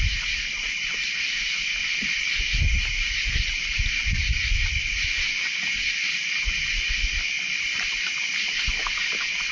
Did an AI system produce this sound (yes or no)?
no